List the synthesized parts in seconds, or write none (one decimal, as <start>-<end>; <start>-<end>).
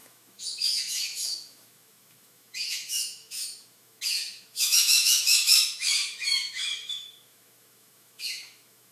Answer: 0.0-8.9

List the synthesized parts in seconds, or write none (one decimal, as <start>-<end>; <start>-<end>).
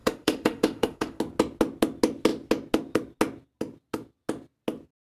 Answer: 0.0-1.2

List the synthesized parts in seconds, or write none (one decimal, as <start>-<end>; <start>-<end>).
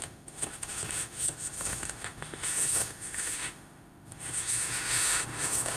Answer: 0.0-5.8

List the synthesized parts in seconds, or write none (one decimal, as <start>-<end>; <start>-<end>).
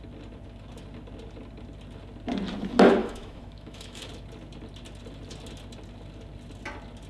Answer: 3.0-4.1